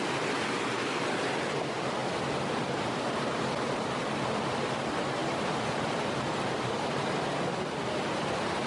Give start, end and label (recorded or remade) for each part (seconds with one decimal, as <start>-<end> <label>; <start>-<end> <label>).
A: 0.0-2.0 recorded; 2.0-3.0 remade; 3.0-5.2 recorded; 5.2-6.7 remade; 6.7-8.7 recorded